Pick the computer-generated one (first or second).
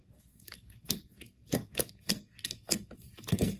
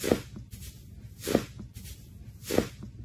first